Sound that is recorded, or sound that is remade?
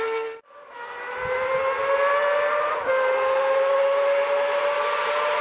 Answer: recorded